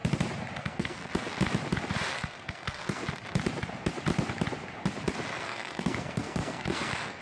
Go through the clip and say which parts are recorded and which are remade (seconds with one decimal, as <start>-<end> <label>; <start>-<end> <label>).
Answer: 0.0-0.6 recorded; 0.6-1.0 remade; 1.0-2.1 recorded; 2.1-3.0 remade; 3.0-5.3 recorded; 5.3-7.2 remade